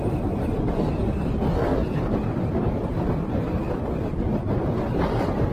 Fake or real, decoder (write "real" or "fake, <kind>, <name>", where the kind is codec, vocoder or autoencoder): fake, vocoder, BigVGAN v2